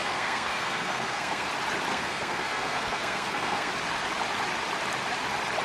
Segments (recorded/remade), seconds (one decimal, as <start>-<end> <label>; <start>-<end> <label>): 0.0-1.5 remade; 1.5-1.9 recorded; 1.9-3.7 remade; 3.7-5.6 recorded